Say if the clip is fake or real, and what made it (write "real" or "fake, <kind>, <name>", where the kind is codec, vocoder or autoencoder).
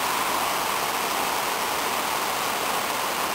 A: real